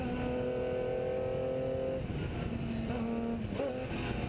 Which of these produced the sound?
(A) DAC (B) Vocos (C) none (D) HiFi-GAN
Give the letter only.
C